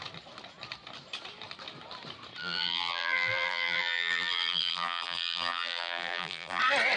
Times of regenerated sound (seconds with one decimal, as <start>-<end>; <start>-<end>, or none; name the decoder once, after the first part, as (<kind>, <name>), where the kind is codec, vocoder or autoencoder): 2.4-6.6 (vocoder, BigVGAN v2)